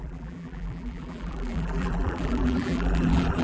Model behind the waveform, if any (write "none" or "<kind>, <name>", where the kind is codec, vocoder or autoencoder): vocoder, BigVGAN v2